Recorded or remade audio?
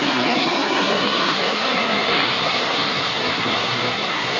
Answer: remade